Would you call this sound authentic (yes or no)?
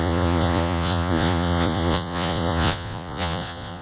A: no